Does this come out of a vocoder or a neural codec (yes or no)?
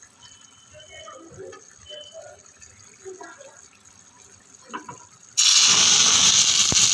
no